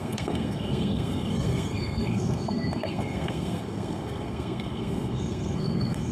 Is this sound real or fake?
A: fake